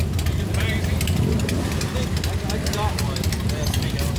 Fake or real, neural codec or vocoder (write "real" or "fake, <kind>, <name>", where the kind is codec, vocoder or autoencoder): real